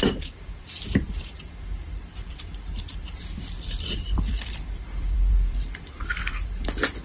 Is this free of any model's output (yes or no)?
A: no